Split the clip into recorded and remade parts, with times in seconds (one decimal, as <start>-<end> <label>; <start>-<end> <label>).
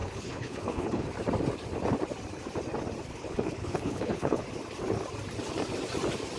0.0-1.1 remade; 1.1-3.1 recorded; 3.1-4.4 remade; 4.4-6.4 recorded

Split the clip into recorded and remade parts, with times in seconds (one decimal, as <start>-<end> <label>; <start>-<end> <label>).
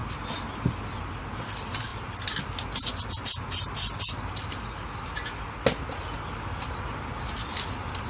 0.0-8.1 recorded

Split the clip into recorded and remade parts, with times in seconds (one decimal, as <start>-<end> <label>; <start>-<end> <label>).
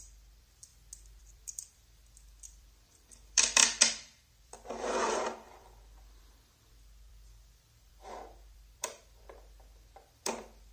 0.0-0.7 remade; 0.7-1.2 recorded; 1.2-3.6 remade; 3.6-4.3 recorded; 4.3-10.7 remade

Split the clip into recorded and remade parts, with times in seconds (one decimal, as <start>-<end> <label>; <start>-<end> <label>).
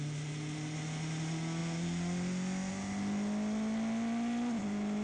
0.0-5.0 recorded